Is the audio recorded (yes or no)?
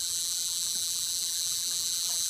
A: no